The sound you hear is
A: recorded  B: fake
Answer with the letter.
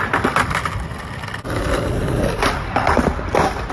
A